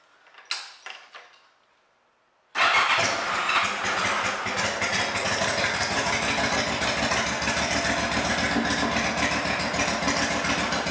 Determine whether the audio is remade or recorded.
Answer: recorded